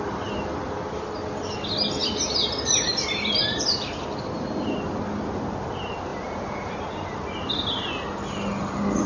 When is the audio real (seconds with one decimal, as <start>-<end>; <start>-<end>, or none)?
0.0-6.1; 6.7-9.1